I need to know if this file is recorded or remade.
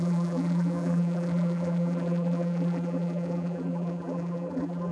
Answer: remade